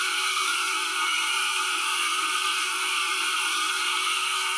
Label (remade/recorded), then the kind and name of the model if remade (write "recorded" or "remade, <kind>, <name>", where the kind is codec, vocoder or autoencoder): remade, codec, SNAC